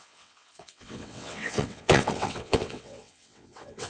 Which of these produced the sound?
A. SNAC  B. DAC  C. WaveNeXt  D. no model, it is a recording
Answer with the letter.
C